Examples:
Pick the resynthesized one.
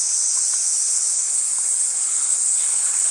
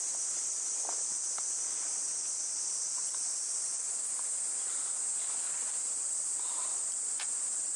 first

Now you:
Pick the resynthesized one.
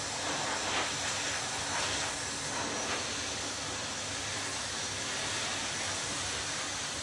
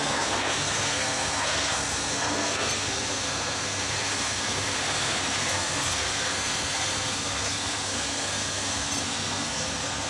second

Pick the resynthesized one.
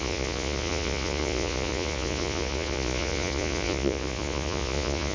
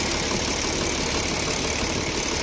first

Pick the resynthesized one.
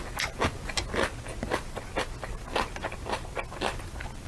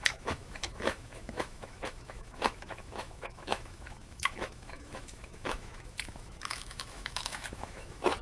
second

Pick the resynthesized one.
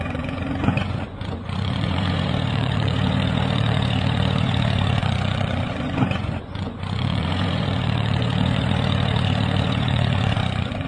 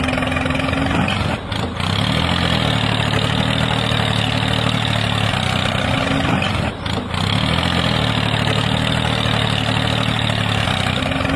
first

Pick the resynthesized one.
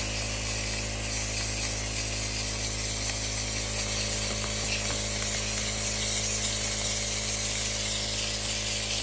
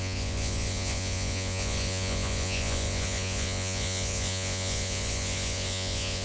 second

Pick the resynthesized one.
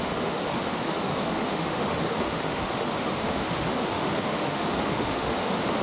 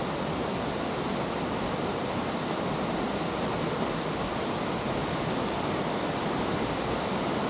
first